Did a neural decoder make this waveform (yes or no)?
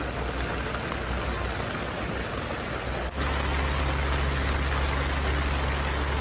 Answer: no